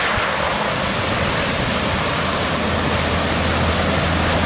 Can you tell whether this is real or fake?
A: real